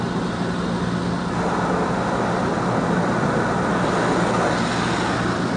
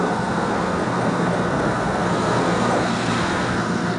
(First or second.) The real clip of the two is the first